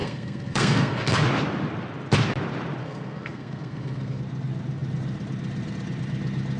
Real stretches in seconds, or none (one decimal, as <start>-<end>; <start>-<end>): 1.2-2.8; 4.2-6.6